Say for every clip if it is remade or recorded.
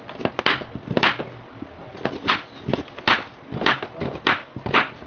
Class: recorded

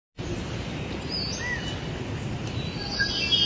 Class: recorded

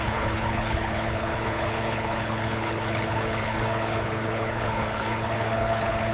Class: remade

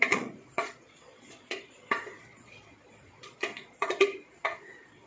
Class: remade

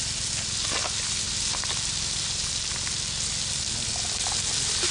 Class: recorded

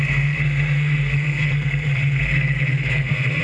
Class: remade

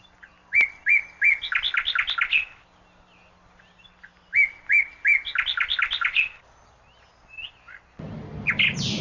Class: recorded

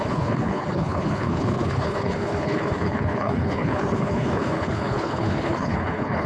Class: remade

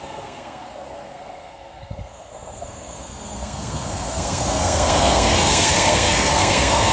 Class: remade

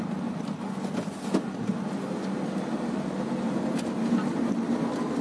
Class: recorded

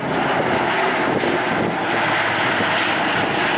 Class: recorded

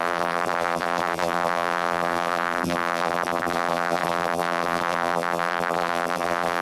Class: remade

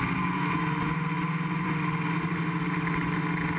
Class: recorded